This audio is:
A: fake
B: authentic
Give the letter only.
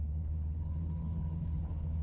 A